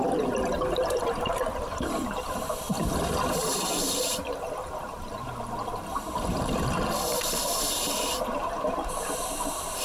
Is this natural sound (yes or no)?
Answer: no